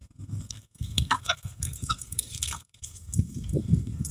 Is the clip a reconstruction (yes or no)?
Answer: yes